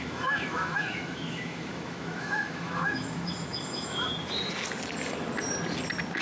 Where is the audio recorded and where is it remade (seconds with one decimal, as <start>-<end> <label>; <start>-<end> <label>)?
0.0-4.1 remade; 4.1-6.2 recorded